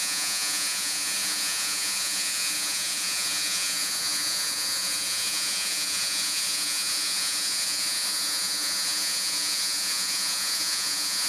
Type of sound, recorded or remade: remade